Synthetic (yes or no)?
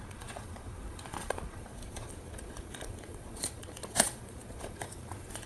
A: yes